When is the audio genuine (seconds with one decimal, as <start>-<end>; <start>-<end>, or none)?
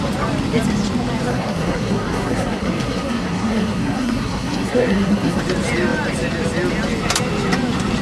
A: 0.0-1.3; 5.4-8.0